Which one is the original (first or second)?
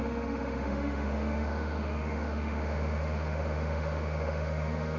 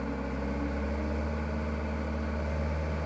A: second